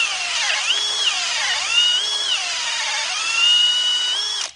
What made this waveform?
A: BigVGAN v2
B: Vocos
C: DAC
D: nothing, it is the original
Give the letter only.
A